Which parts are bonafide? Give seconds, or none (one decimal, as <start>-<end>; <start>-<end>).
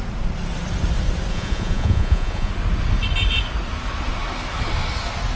0.0-1.3; 2.5-5.4